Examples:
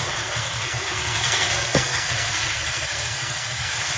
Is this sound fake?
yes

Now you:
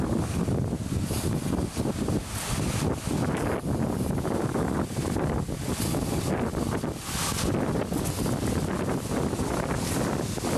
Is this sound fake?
no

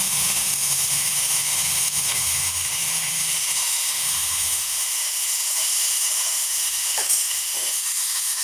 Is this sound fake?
yes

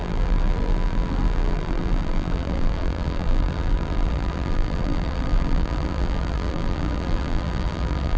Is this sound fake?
yes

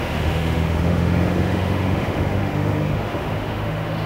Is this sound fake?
yes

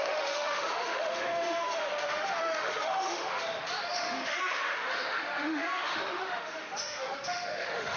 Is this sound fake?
yes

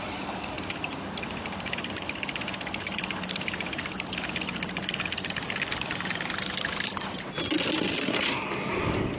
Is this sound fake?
no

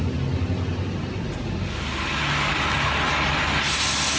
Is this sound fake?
no